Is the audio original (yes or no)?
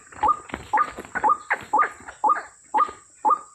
yes